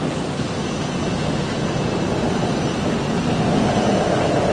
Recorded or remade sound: recorded